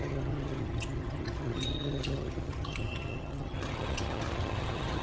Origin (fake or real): fake